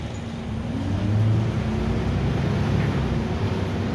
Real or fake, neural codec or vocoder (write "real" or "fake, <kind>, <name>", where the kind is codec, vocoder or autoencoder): real